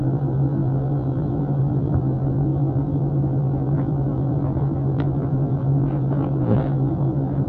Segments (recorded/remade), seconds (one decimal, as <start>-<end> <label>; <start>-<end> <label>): 0.0-7.5 remade